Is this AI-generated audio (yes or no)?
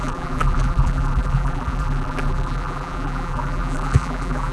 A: yes